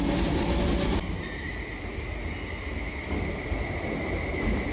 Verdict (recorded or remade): recorded